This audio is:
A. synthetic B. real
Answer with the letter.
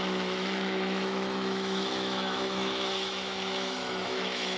A